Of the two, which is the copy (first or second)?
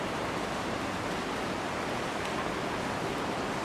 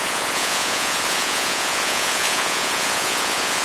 second